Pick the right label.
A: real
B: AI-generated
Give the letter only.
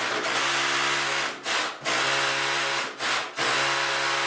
A